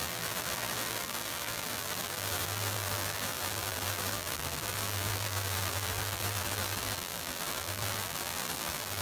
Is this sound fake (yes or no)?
yes